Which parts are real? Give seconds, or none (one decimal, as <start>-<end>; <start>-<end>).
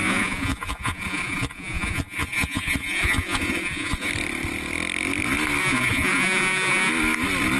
4.1-5.6; 6.9-7.6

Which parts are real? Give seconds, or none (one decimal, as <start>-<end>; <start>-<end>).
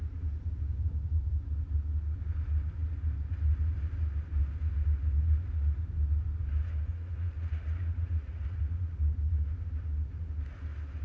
0.0-6.9; 8.9-11.0